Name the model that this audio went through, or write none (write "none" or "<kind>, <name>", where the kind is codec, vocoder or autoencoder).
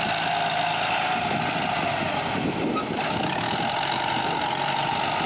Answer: none